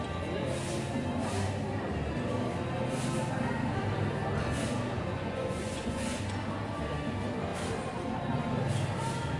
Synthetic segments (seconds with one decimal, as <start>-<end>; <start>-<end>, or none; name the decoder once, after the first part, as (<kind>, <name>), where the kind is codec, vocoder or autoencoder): 5.1-6.2 (vocoder, Vocos)